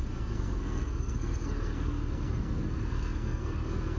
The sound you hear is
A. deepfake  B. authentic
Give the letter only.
A